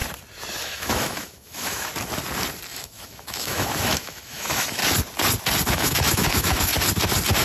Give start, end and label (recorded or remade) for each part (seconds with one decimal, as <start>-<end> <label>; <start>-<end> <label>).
0.0-0.6 recorded; 0.6-1.9 remade; 1.9-2.7 recorded; 2.7-4.8 remade; 4.8-5.7 recorded; 5.7-6.7 remade; 6.7-7.4 recorded